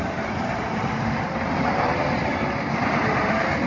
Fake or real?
fake